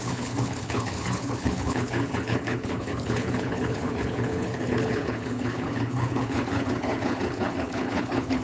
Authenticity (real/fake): fake